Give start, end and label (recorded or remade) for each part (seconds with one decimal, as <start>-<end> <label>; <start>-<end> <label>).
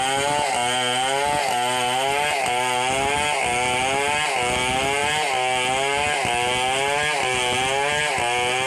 0.0-8.7 recorded